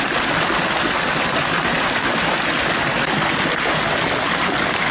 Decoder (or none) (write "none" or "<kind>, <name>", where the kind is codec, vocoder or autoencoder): none